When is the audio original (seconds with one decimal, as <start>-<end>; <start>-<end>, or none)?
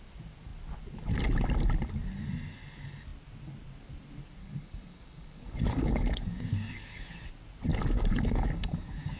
0.0-4.4; 7.3-7.7